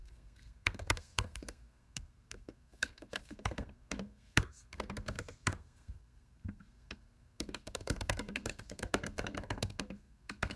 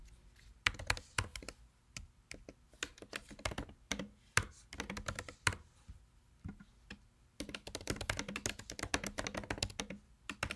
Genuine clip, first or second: second